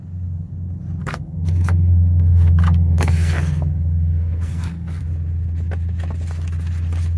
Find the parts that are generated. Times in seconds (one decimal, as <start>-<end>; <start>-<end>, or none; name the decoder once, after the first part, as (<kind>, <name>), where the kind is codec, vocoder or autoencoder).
1.0-5.0 (codec, SNAC)